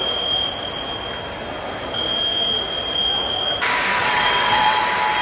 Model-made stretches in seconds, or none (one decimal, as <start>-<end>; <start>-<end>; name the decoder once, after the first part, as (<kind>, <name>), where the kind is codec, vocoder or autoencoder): 4.0-4.8 (vocoder, WaveNeXt)